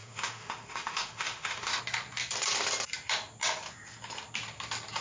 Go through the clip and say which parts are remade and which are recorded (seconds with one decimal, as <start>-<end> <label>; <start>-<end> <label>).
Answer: 0.0-1.8 remade; 1.8-5.0 recorded